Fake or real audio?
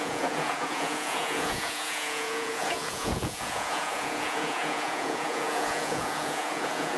fake